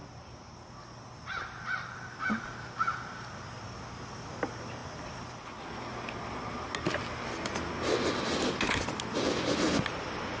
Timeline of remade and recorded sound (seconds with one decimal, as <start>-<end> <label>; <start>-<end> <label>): 0.0-10.4 recorded